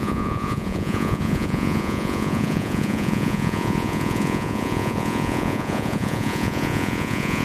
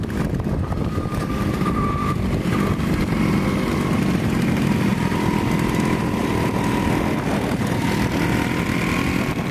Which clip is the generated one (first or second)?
first